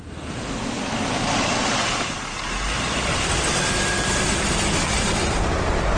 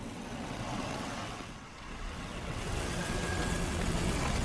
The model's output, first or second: second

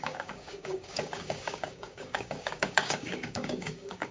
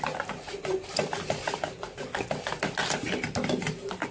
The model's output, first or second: first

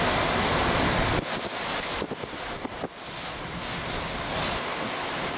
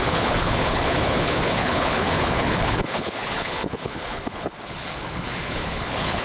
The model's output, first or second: second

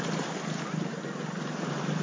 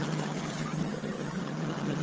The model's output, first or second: second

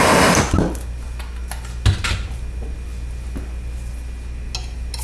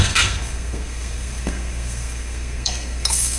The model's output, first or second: second